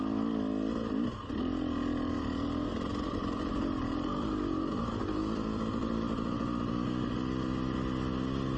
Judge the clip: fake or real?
real